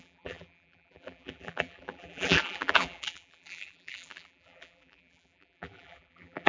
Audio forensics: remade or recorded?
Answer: remade